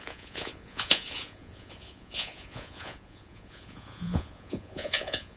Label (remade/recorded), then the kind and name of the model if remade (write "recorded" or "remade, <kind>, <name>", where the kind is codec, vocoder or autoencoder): remade, vocoder, Vocos